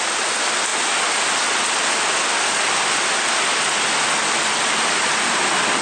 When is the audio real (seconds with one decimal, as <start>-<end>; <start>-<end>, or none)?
0.0-5.8